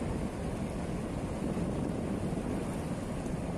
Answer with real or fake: real